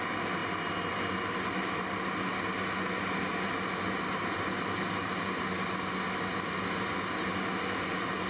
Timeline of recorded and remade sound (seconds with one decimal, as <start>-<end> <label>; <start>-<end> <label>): 0.0-8.3 recorded